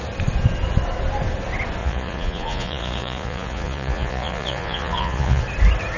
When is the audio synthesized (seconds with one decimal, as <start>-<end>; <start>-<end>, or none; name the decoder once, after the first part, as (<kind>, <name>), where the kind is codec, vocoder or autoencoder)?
1.8-5.4 (vocoder, Vocos)